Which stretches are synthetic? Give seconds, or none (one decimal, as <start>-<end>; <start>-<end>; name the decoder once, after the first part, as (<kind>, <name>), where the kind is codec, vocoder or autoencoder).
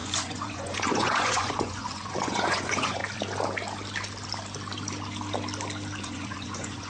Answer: 0.0-3.0 (vocoder, Vocos); 6.0-6.9